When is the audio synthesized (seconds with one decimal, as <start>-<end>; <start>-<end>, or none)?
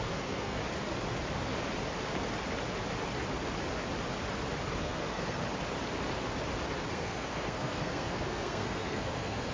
0.0-0.6; 4.8-5.4; 6.9-9.5